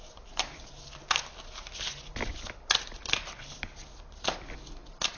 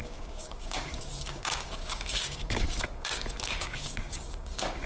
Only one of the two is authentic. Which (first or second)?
first